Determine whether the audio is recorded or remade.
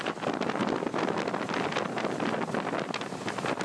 recorded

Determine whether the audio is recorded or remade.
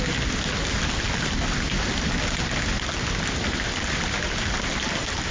recorded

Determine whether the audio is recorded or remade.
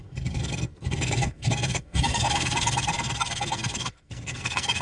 remade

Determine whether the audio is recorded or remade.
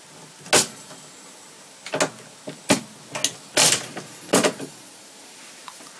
recorded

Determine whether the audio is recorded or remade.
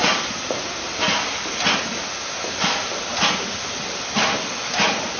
recorded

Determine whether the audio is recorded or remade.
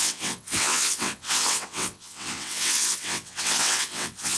remade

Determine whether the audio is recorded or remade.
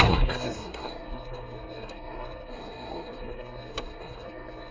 remade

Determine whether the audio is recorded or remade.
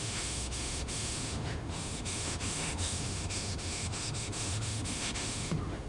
remade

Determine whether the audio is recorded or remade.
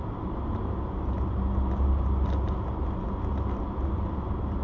recorded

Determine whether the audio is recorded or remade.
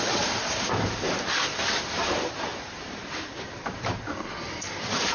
remade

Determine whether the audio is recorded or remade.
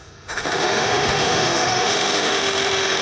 remade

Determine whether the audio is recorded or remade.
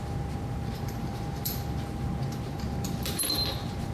remade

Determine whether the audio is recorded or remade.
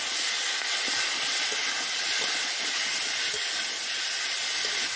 recorded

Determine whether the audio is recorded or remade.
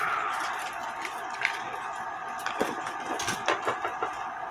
recorded